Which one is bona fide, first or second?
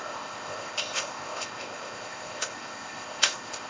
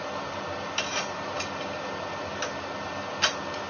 second